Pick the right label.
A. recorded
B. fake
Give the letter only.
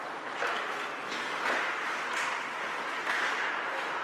A